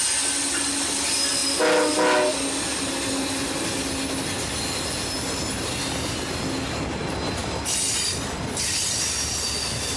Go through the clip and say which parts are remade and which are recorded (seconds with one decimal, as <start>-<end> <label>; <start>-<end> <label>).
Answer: 0.0-7.4 recorded; 7.4-9.3 remade; 9.3-10.0 recorded